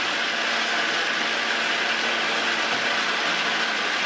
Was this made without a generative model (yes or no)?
yes